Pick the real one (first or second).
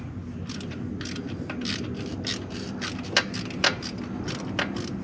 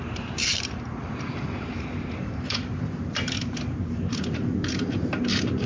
first